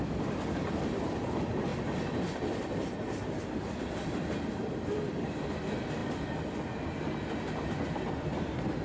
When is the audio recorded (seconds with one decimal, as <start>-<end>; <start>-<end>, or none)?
1.7-4.1; 6.0-7.8